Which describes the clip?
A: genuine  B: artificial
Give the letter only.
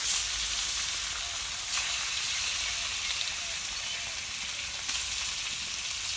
A